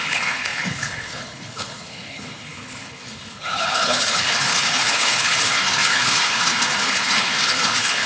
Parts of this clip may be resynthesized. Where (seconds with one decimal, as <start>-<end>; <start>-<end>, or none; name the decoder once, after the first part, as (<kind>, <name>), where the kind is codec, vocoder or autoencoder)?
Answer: 0.0-8.1 (codec, HILCodec)